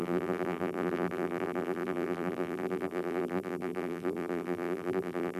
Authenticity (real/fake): fake